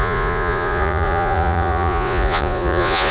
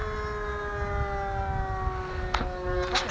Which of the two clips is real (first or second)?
second